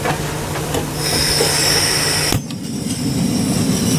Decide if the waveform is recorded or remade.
recorded